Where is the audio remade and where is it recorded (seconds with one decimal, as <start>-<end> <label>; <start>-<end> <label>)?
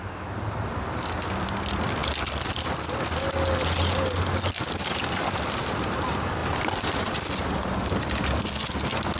0.0-9.2 recorded